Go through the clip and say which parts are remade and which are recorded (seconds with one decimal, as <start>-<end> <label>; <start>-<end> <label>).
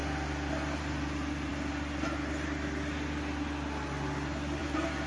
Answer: 0.0-5.1 recorded